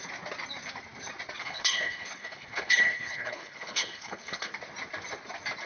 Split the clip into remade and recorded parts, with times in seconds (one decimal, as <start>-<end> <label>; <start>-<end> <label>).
0.0-1.4 recorded; 1.4-4.5 remade; 4.5-5.7 recorded